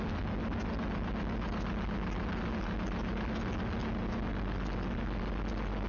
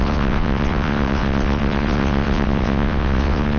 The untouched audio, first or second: first